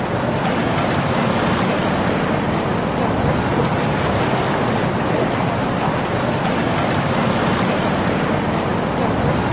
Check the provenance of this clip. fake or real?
real